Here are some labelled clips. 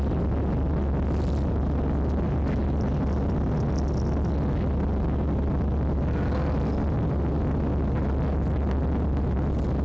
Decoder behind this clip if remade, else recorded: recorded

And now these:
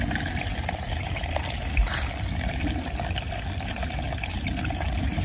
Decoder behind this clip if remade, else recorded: recorded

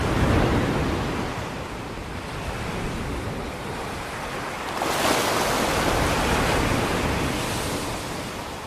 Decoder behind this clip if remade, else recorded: recorded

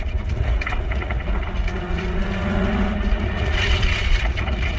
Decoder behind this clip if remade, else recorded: remade, vocoder, Vocos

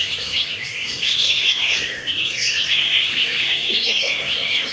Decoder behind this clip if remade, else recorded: remade, codec, SNAC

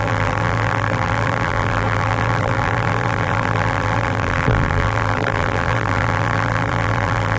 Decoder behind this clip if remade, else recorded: remade, vocoder, BigVGAN v2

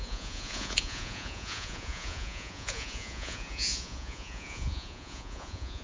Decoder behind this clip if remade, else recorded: remade, vocoder, Vocos